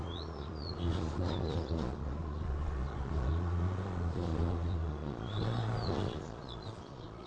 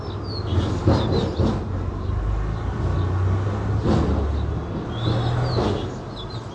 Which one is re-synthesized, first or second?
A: first